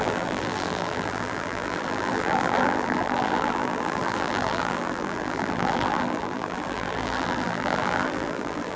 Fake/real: fake